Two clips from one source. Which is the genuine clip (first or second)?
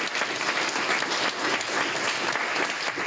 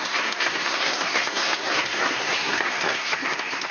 first